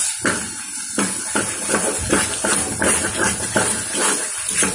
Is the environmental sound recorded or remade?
recorded